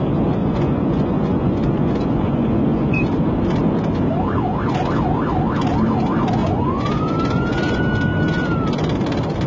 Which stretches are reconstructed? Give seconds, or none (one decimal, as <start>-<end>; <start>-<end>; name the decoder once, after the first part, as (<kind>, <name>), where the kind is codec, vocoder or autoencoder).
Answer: 0.4-3.0 (vocoder, Vocos); 6.4-7.8